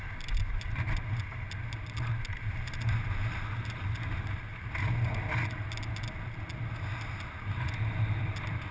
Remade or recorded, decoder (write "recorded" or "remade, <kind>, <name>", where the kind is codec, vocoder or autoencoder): recorded